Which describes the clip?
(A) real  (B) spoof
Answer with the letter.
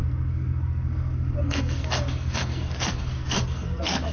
B